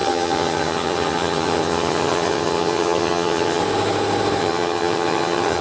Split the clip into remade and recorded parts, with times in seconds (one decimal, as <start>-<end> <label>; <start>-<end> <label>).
0.0-3.6 remade; 3.6-4.4 recorded; 4.4-5.6 remade